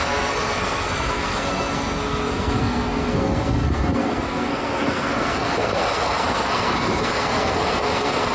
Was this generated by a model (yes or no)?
yes